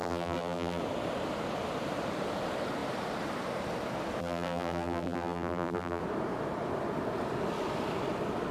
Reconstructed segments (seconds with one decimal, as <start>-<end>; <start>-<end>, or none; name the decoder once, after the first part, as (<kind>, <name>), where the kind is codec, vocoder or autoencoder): 0.0-0.8 (vocoder, BigVGAN v2); 4.2-6.0